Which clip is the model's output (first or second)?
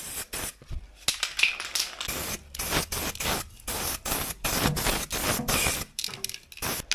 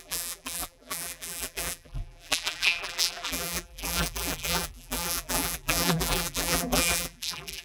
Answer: second